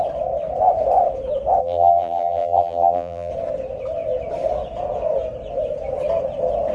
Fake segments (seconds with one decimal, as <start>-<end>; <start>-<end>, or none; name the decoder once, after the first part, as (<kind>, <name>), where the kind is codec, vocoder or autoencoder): 1.6-3.3 (vocoder, BigVGAN v2)